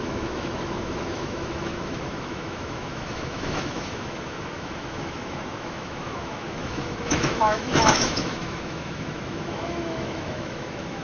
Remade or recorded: remade